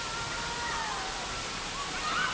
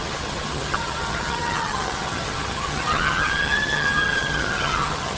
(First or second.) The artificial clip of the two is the second